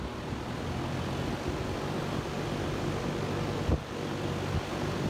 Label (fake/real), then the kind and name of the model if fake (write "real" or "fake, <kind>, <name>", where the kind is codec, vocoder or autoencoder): real